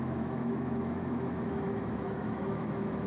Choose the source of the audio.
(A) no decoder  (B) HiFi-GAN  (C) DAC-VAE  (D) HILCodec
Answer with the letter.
C